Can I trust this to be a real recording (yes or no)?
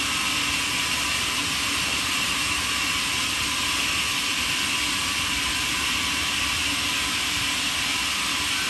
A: yes